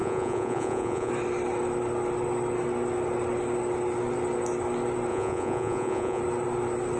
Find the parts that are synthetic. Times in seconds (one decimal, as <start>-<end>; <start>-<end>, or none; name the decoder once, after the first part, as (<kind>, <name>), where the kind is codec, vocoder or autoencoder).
0.0-1.1 (vocoder, Vocos); 5.1-6.2